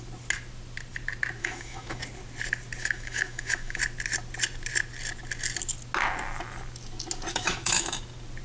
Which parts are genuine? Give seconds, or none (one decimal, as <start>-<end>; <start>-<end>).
0.0-1.4; 2.0-2.8; 3.8-7.3; 8.0-8.4